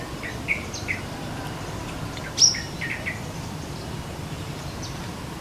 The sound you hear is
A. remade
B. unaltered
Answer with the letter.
A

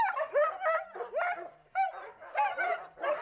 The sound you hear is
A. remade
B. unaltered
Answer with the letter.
B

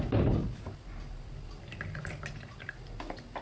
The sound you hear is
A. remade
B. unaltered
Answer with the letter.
B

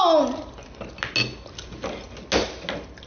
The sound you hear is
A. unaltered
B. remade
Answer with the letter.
A